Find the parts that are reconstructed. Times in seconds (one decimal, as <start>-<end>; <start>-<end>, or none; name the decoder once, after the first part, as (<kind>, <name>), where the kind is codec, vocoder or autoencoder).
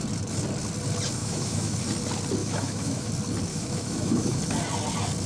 1.2-1.8 (autoencoder, DAC-VAE); 2.4-3.1; 3.5-4.4